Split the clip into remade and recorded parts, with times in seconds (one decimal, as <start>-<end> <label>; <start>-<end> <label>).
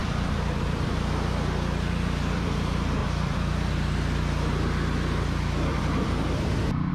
0.0-1.3 remade; 1.3-3.0 recorded; 3.0-3.7 remade; 3.7-5.7 recorded; 5.7-6.9 remade